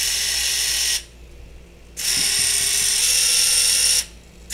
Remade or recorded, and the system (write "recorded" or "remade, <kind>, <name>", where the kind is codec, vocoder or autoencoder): recorded